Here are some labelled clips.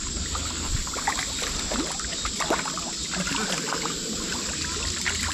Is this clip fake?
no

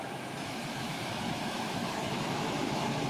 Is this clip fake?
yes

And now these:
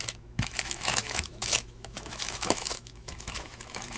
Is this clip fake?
yes